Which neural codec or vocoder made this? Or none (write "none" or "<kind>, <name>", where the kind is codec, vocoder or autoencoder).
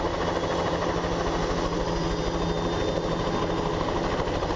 none